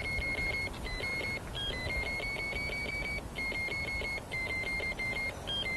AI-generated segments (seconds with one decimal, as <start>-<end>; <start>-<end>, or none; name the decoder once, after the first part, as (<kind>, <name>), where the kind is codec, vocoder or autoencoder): none